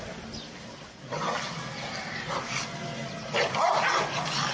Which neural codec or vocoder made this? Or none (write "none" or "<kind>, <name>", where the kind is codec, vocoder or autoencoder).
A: none